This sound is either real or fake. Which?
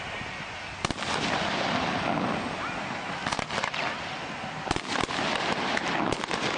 real